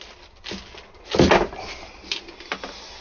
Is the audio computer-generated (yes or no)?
no